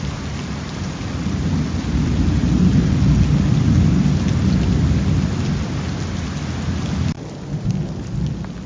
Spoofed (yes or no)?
no